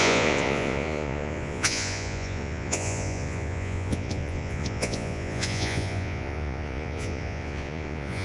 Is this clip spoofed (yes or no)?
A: yes